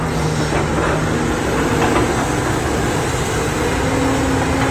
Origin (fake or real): real